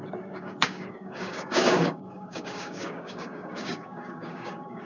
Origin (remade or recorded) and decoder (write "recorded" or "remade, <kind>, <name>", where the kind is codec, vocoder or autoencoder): remade, codec, DAC